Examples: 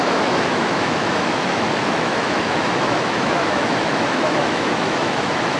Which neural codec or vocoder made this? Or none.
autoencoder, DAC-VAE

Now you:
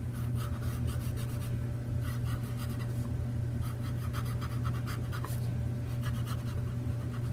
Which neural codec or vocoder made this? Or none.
none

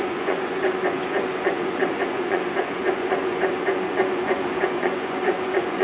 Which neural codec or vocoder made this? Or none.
vocoder, Vocos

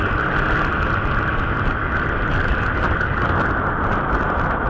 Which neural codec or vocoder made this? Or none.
none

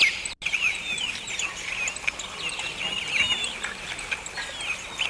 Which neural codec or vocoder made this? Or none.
none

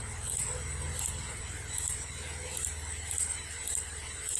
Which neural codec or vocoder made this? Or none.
none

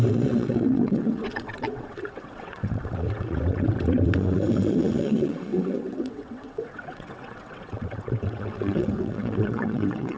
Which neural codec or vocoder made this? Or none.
vocoder, WaveNeXt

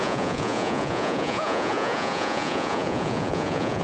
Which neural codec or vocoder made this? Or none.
vocoder, Vocos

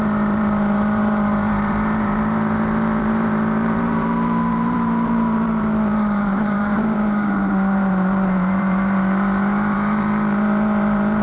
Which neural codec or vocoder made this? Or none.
vocoder, BigVGAN v2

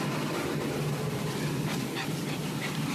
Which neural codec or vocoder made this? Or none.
none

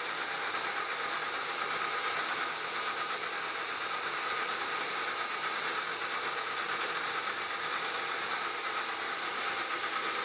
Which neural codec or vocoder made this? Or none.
none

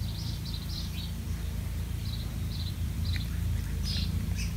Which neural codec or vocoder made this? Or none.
vocoder, BigVGAN v2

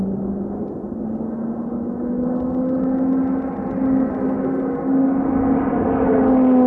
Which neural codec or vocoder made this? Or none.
none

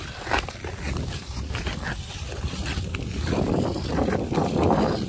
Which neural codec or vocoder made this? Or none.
none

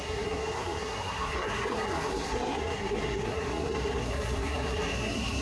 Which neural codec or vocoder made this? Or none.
codec, SNAC